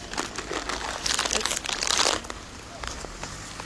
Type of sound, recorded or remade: recorded